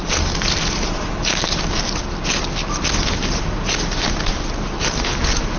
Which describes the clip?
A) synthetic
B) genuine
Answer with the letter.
B